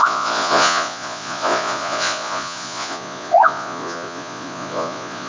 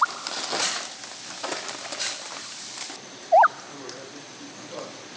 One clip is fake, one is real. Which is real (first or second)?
second